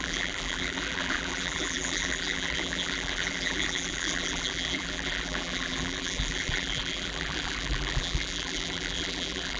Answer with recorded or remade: remade